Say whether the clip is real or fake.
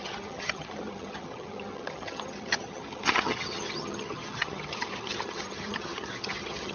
fake